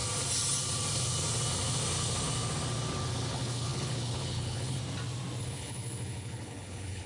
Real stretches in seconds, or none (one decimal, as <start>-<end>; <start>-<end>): 0.0-3.3; 4.8-5.4